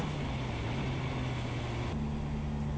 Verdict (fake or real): real